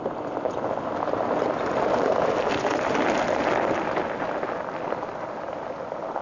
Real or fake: real